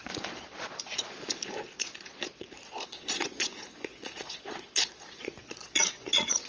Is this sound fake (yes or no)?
yes